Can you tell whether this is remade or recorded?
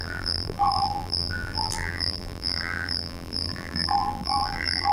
remade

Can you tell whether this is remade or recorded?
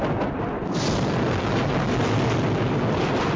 recorded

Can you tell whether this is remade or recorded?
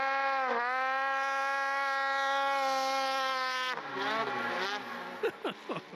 recorded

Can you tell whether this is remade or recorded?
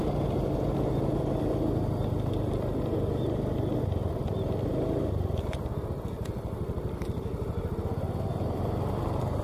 recorded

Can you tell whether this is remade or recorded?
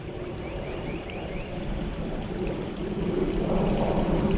remade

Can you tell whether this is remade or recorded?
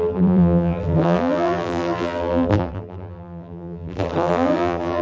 remade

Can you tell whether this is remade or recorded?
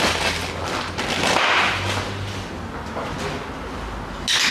recorded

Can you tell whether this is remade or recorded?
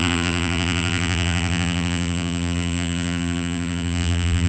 remade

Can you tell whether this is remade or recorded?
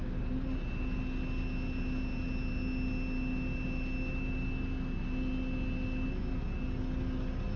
recorded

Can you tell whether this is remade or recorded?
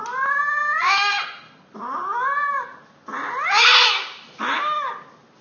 recorded